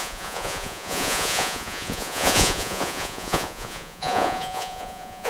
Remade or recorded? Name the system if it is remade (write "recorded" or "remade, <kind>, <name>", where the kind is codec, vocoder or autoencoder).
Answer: remade, vocoder, Vocos